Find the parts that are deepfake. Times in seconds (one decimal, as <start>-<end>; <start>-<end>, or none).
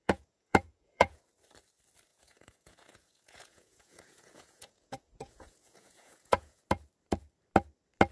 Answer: 0.0-1.2; 2.1-6.6